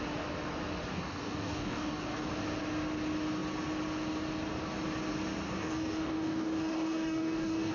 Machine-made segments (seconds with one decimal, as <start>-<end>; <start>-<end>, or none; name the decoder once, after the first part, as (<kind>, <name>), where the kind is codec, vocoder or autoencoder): 0.9-2.3 (codec, DAC); 5.6-7.7